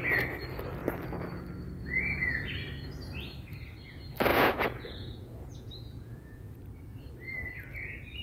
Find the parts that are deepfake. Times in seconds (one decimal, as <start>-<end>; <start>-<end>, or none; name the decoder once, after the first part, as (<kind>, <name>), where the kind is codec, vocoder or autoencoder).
4.3-6.6 (vocoder, Vocos)

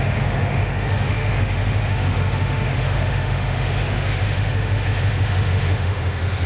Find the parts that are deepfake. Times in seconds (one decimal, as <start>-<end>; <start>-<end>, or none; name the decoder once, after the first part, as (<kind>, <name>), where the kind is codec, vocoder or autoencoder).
0.0-6.5 (autoencoder, DAC-VAE)

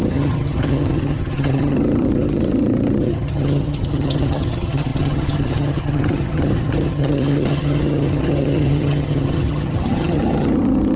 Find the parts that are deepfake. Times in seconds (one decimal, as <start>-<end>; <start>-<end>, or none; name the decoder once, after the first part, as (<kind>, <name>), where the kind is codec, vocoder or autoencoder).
0.0-11.0 (vocoder, HiFi-GAN)

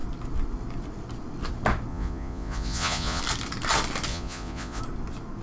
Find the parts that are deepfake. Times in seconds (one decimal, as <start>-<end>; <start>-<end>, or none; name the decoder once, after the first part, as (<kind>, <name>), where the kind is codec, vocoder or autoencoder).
1.9-3.2 (vocoder, Vocos); 4.1-4.8

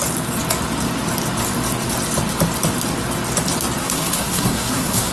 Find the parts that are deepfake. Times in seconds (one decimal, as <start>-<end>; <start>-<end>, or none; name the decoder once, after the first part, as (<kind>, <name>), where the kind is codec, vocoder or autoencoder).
3.8-5.1 (codec, SNAC)

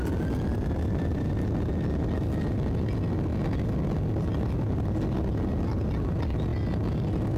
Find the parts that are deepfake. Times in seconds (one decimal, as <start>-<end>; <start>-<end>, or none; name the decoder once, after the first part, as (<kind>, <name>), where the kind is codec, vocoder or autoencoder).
0.5-1.3 (vocoder, BigVGAN v2)